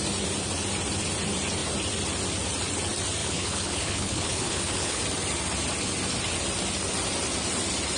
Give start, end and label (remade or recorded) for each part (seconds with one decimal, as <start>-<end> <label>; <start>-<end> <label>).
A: 0.0-3.2 recorded; 3.2-5.0 remade; 5.0-8.0 recorded